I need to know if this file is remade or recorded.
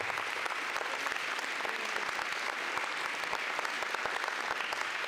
recorded